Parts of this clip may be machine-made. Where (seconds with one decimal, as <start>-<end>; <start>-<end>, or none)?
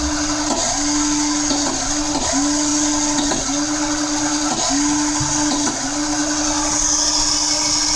none